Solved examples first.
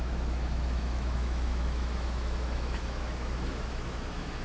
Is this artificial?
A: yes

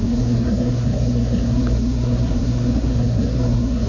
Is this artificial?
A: yes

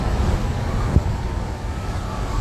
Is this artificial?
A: yes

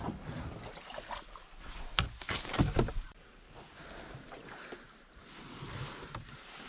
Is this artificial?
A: no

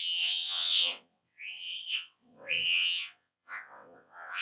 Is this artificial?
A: yes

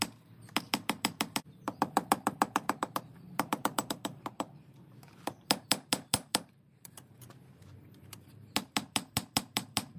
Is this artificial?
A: yes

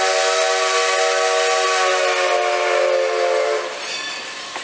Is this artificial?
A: no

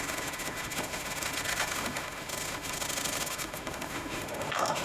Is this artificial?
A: yes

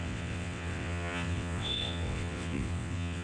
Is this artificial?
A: yes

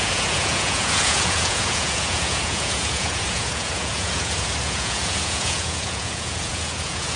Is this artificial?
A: yes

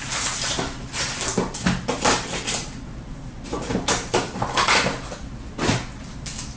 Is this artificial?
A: no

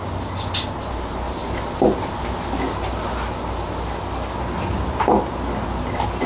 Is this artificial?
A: no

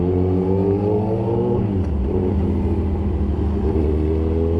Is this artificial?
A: no